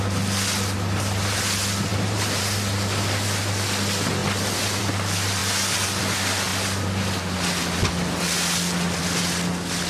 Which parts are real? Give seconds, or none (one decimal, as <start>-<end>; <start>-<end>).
0.0-1.9; 2.4-9.9